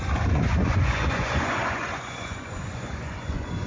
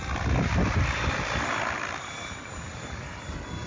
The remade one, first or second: first